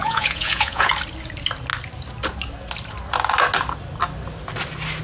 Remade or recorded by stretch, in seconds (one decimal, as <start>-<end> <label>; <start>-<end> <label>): 0.0-0.9 remade; 0.9-5.0 recorded